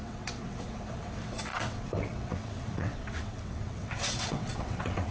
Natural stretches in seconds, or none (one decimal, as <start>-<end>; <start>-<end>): none